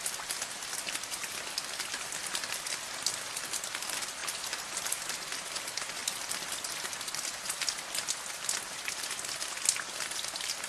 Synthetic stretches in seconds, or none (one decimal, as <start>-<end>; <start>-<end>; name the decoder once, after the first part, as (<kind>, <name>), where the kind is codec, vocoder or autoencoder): none

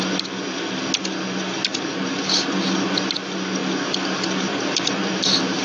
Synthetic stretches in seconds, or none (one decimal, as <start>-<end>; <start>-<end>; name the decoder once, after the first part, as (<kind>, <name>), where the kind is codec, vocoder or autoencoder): none

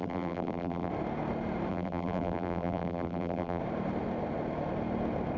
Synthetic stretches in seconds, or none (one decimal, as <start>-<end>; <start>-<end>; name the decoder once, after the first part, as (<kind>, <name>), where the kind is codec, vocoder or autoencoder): 0.0-0.9 (vocoder, BigVGAN v2); 1.7-3.6

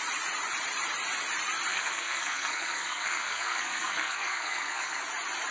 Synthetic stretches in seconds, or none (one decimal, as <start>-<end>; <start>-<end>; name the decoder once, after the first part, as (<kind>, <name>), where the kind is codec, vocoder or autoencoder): 1.7-5.0 (codec, SNAC)